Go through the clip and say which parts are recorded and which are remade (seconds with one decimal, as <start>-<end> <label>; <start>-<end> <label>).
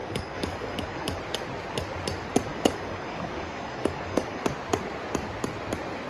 0.0-1.2 remade; 1.2-2.5 recorded; 2.5-4.4 remade; 4.4-6.1 recorded